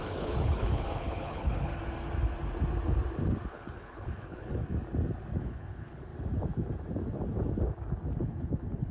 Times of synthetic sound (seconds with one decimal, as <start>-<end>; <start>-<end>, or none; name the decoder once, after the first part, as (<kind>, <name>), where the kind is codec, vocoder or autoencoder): 0.0-1.7 (codec, HILCodec); 3.5-4.6; 5.4-6.1; 8.2-8.9